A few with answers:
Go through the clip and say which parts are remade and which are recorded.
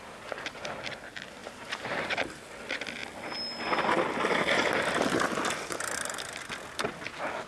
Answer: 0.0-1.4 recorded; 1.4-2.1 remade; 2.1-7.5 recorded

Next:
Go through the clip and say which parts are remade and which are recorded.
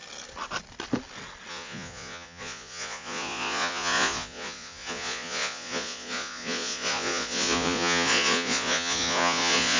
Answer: 0.0-1.5 recorded; 1.5-9.8 remade